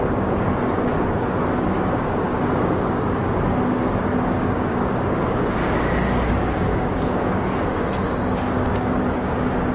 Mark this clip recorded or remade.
remade